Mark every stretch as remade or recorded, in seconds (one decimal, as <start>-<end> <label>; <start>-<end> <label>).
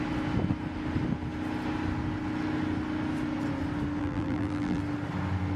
0.0-4.0 recorded; 4.0-4.8 remade; 4.8-5.6 recorded